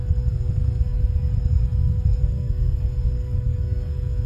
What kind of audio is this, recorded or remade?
remade